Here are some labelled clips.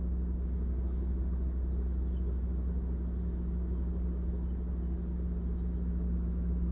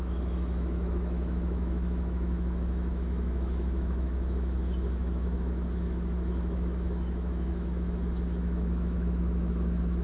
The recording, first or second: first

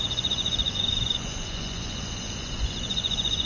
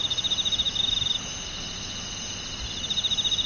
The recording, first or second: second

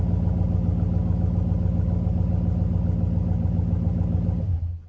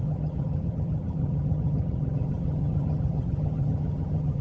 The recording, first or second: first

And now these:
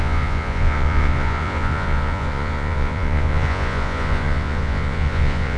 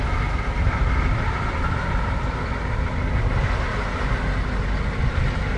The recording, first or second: second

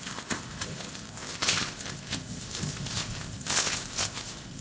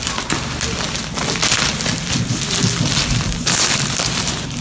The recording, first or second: second